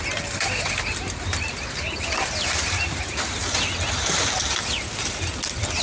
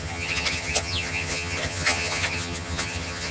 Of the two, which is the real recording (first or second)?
first